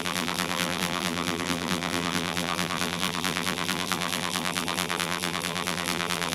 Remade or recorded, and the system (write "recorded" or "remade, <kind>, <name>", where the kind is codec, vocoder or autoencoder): remade, vocoder, BigVGAN v2